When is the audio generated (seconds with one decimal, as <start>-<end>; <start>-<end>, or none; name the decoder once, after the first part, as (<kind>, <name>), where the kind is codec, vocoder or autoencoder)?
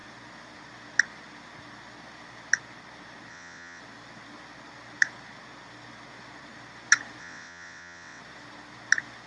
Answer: 3.3-3.8 (vocoder, WaveNeXt); 7.2-8.2